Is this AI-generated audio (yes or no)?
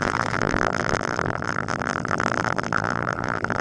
yes